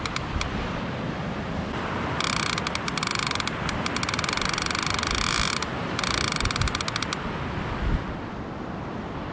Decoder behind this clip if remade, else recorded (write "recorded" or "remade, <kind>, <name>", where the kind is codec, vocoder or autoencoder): recorded